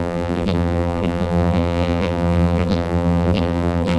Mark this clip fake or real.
fake